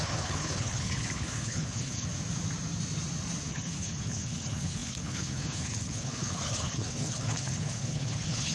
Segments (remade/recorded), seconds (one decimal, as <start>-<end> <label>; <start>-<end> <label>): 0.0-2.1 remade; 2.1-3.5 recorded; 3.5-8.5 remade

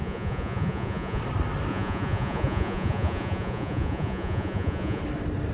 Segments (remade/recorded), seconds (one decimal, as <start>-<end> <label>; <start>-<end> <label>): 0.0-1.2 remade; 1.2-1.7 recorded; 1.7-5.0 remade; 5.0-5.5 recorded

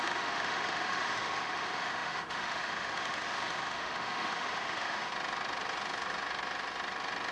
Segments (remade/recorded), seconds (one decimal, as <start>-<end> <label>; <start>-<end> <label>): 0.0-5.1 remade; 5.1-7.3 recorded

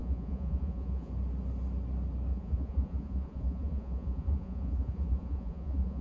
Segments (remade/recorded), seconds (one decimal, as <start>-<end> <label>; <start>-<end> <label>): 0.0-1.1 remade; 1.1-2.3 recorded; 2.3-6.0 remade